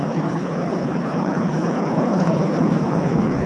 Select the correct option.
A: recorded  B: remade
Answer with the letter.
B